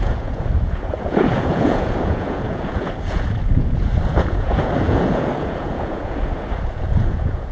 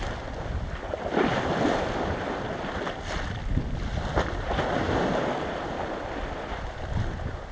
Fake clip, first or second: first